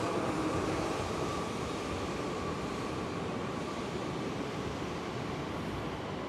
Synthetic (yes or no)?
yes